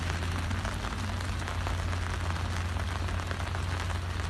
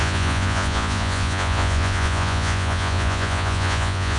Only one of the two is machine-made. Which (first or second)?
second